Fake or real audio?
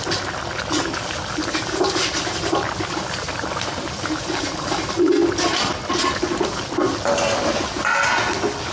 real